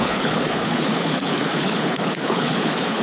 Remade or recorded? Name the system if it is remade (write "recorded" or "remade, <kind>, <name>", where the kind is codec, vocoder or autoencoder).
remade, codec, HILCodec